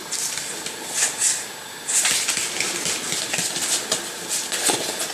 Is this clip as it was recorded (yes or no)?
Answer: yes